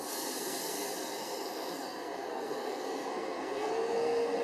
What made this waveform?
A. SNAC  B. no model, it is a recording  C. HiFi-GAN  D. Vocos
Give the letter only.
A